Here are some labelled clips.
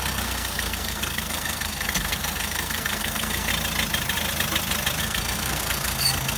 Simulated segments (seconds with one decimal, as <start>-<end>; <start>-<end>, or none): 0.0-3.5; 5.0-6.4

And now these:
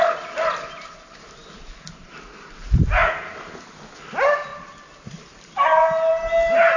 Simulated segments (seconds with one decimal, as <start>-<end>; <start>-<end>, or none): none

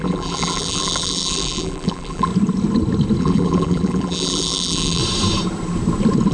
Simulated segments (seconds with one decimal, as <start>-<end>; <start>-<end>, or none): 0.0-2.3; 3.2-5.0

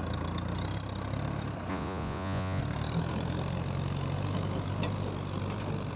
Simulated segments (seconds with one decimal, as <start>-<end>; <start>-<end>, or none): 1.7-2.6

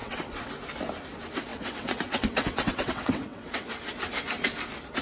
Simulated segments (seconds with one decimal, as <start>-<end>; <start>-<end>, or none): 0.0-0.5; 1.5-3.7

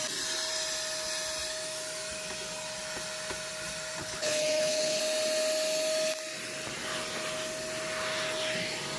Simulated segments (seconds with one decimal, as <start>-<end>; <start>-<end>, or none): 4.0-5.0